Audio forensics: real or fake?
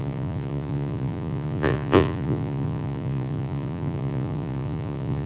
fake